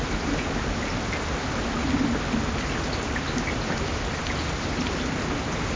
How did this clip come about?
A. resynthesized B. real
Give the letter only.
B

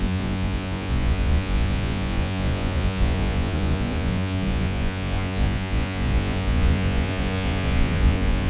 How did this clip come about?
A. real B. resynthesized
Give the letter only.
B